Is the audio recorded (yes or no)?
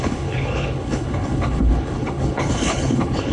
no